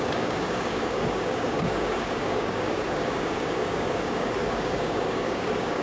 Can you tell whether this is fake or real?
fake